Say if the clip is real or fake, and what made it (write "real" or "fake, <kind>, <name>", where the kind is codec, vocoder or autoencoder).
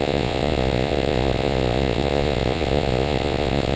fake, vocoder, Vocos